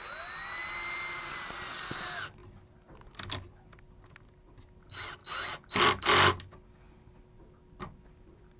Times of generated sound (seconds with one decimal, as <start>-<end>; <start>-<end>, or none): none